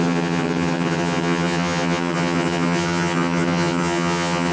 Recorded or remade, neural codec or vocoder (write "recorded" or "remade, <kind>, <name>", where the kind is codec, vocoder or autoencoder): remade, vocoder, HiFi-GAN